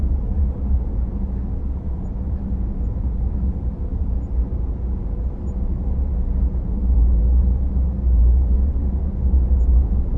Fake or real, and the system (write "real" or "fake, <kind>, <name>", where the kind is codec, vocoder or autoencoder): fake, vocoder, BigVGAN v2